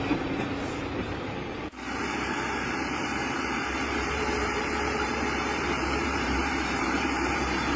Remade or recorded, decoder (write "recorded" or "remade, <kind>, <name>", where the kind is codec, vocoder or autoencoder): remade, vocoder, BigVGAN v2